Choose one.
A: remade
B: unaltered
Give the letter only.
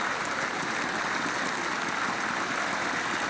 B